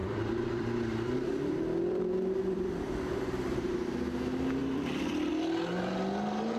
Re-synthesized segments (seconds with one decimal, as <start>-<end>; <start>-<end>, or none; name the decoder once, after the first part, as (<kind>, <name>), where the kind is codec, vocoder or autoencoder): 0.0-3.7 (vocoder, BigVGAN v2); 4.6-5.3